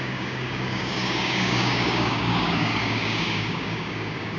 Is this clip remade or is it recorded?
remade